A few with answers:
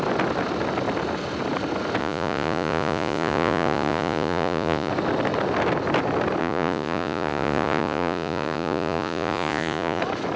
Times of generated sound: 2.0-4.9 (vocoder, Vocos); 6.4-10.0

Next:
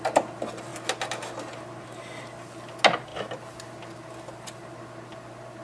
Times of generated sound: none

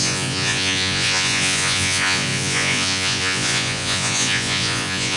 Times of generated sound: 0.0-5.2 (vocoder, Vocos)

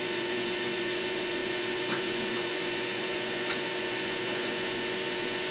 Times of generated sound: 0.0-5.5 (vocoder, Vocos)